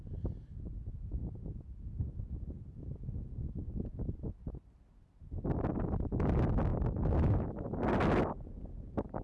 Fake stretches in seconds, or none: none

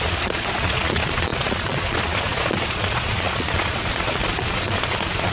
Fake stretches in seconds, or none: 0.0-5.3

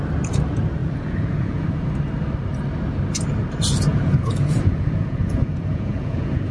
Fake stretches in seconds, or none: 0.8-1.9; 3.9-6.5

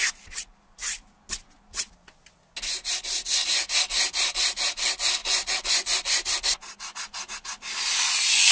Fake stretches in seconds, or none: 5.2-6.1

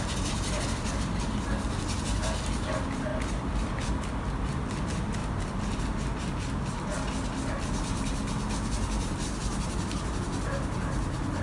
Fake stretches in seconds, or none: none